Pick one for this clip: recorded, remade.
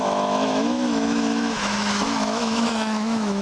remade